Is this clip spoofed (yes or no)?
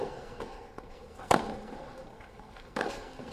yes